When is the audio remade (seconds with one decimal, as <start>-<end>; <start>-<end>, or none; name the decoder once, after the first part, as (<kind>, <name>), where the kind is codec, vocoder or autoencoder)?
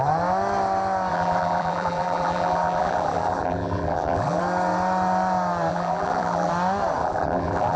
1.1-4.4 (vocoder, BigVGAN v2); 5.7-6.5; 7.0-7.8